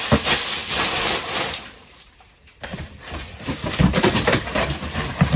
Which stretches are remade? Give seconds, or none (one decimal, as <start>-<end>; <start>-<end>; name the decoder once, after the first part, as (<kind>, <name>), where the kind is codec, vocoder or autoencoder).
0.6-2.1 (vocoder, BigVGAN v2); 2.7-4.4